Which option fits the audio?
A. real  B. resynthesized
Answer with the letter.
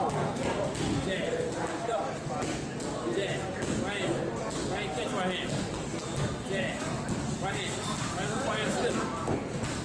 A